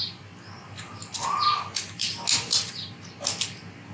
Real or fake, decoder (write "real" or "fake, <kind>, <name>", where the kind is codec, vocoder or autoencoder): real